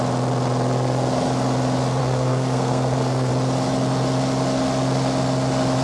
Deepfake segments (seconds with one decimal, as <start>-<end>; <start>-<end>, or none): 2.0-3.3